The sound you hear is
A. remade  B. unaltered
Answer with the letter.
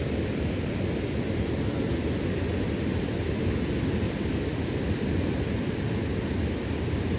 B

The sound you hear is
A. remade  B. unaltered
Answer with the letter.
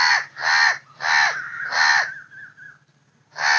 B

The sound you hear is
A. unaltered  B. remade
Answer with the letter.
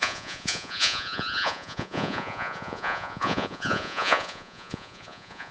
B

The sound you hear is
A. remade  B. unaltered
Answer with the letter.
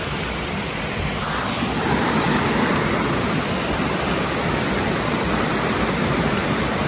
B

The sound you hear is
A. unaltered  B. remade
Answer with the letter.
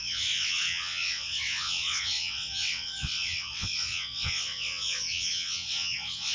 B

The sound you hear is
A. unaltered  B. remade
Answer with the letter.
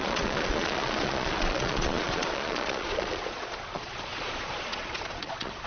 B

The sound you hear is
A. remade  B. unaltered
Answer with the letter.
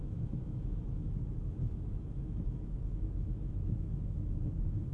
A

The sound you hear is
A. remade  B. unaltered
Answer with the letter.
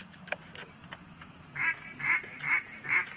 B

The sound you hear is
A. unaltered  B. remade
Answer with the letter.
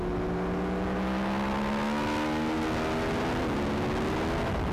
A